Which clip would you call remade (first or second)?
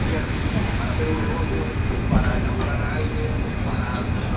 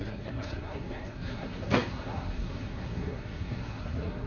second